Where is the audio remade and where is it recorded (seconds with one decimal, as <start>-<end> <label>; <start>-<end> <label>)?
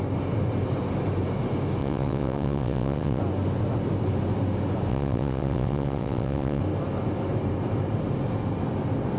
0.0-1.8 recorded; 1.8-3.2 remade; 3.2-4.9 recorded; 4.9-6.6 remade; 6.6-9.2 recorded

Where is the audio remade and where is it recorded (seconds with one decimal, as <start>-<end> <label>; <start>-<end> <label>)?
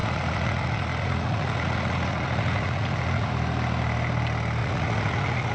0.0-3.3 remade; 3.3-4.6 recorded; 4.6-5.5 remade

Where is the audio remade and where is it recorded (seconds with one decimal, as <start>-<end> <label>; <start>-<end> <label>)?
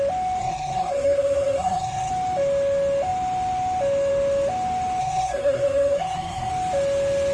0.0-0.4 recorded; 0.4-2.1 remade; 2.1-5.0 recorded; 5.0-6.5 remade; 6.5-7.3 recorded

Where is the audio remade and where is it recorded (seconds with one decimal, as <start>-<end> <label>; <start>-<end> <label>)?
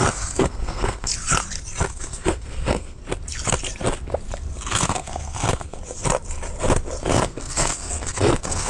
0.0-1.1 remade; 1.1-1.9 recorded; 1.9-3.0 remade; 3.0-4.7 recorded; 4.7-5.8 remade; 5.8-7.0 recorded; 7.0-8.7 remade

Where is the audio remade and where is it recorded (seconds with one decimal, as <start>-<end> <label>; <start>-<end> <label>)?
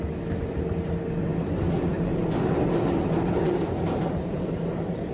0.0-1.9 recorded; 1.9-5.1 remade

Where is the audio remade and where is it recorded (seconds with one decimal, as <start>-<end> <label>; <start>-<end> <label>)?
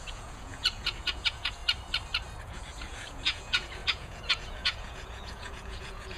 0.0-1.6 remade; 1.6-2.4 recorded; 2.4-6.2 remade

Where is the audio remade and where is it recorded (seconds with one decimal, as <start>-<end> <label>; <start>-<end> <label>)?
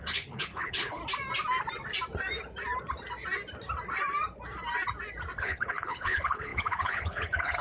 0.0-1.0 remade; 1.0-5.4 recorded; 5.4-7.6 remade